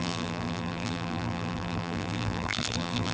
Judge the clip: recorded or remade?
remade